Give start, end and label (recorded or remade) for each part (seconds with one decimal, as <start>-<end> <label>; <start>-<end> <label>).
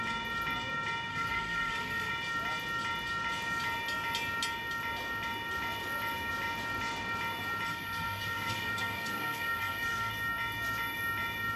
0.0-1.1 recorded; 1.1-2.1 remade; 2.1-7.7 recorded; 7.7-10.1 remade; 10.1-11.6 recorded